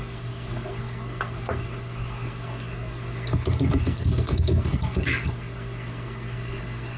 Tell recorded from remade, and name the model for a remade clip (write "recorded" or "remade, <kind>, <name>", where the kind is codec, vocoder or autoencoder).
remade, codec, SNAC